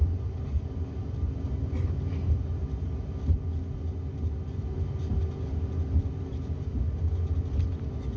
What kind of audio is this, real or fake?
real